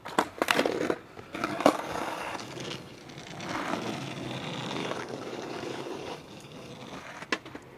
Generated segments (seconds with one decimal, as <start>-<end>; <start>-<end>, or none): 1.4-3.0; 4.8-6.7